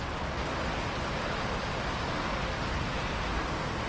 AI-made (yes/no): no